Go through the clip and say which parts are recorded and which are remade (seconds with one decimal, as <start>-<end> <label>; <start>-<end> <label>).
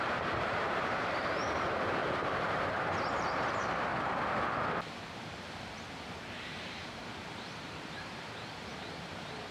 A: 0.0-3.9 remade; 3.9-6.1 recorded; 6.1-9.5 remade